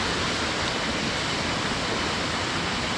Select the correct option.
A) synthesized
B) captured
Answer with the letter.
B